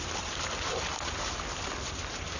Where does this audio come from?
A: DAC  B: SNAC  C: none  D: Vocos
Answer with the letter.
C